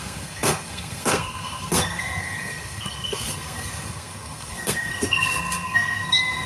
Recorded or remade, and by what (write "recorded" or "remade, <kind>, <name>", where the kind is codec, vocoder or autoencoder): remade, codec, SNAC